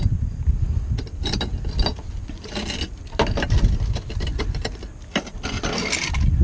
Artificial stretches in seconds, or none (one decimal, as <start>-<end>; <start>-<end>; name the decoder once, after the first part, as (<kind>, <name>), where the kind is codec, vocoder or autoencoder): none